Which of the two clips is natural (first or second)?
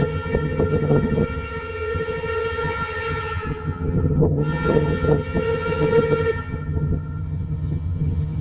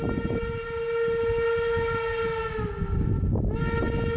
second